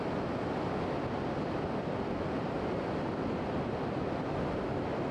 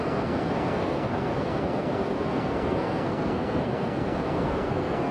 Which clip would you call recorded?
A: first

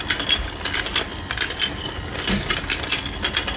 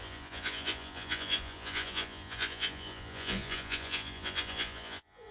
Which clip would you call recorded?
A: first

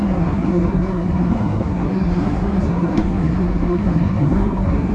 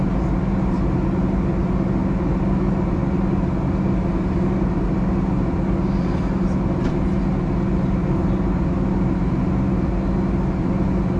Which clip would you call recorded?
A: second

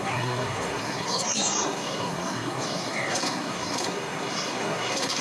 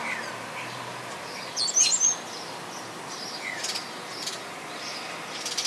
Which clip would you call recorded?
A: second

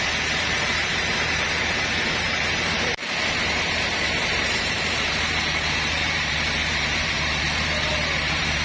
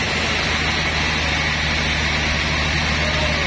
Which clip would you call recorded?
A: second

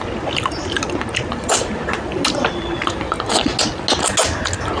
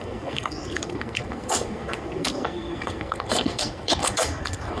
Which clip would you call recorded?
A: first